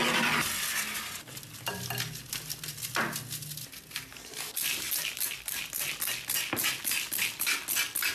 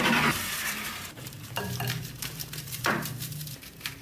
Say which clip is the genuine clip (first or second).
first